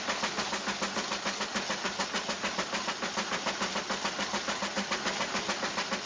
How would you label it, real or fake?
real